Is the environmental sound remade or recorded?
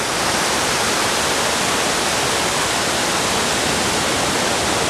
recorded